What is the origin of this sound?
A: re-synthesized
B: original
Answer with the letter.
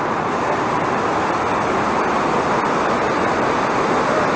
B